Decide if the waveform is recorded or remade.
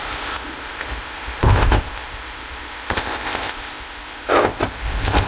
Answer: remade